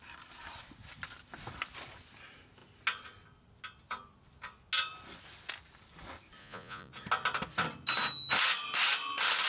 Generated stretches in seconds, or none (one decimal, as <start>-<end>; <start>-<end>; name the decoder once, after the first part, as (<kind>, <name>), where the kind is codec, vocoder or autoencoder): 6.4-6.9 (vocoder, Vocos)